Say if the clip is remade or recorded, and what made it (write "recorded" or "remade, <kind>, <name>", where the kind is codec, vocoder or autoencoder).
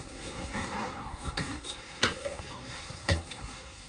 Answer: remade, codec, SNAC